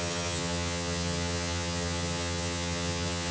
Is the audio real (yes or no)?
no